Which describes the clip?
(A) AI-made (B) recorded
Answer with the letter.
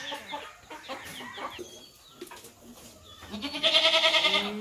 B